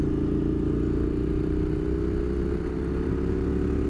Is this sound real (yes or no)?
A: yes